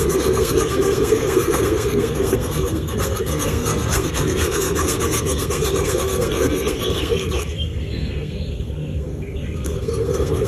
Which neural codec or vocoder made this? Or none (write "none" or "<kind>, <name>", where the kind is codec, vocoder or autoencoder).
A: codec, SNAC